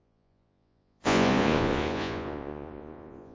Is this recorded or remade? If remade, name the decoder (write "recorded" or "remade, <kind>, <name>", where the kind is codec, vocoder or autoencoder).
remade, vocoder, Vocos